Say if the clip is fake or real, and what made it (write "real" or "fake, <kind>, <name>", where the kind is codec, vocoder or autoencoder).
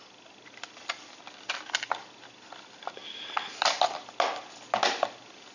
real